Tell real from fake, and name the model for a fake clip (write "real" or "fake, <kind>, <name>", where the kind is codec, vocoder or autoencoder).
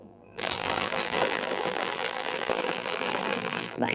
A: fake, vocoder, BigVGAN v2